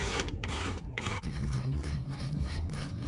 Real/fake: fake